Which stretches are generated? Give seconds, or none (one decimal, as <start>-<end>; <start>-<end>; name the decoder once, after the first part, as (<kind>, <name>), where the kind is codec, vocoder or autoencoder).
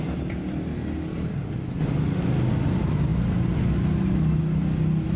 none